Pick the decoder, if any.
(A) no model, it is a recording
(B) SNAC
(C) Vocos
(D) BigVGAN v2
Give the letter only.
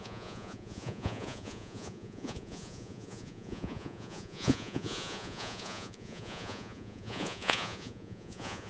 C